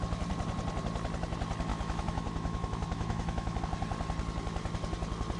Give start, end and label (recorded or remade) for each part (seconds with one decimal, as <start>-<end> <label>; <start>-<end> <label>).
0.0-1.7 recorded; 1.7-3.6 remade; 3.6-5.4 recorded